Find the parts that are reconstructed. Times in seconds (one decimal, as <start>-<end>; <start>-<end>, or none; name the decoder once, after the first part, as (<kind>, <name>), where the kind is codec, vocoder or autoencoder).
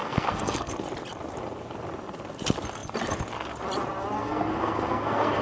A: 0.0-0.7 (codec, SNAC); 4.2-5.4